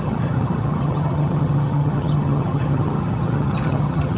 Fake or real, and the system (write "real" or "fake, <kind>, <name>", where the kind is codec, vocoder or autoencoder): fake, vocoder, HiFi-GAN